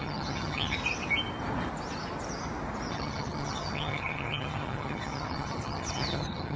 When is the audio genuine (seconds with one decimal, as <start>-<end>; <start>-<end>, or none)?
0.8-2.9